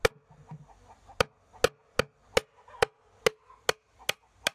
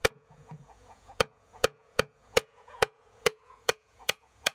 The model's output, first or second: second